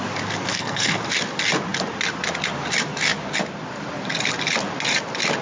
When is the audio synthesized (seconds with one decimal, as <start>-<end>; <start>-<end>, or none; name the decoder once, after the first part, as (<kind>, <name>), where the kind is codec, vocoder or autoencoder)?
0.5-1.0 (codec, SNAC)

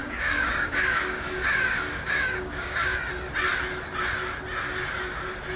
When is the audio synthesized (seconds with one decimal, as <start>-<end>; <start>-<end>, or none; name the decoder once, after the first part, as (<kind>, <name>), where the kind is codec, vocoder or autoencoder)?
0.0-3.0 (codec, DAC)